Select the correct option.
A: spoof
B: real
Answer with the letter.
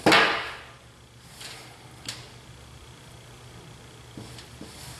B